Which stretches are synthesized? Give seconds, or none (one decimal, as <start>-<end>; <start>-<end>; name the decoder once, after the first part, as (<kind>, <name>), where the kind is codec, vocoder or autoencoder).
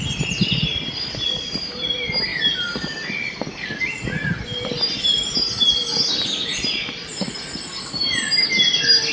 none